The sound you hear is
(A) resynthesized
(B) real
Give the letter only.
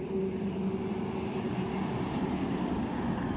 B